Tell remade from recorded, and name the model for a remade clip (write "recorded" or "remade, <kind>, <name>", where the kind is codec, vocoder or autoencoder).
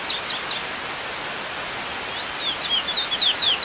recorded